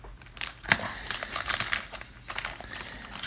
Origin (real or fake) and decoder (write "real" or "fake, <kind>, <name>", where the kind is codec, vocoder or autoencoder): real